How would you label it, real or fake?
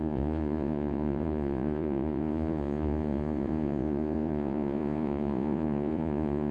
fake